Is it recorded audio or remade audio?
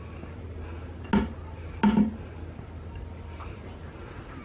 recorded